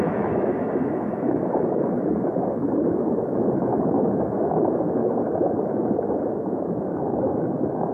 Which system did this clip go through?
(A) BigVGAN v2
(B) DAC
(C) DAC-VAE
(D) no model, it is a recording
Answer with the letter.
C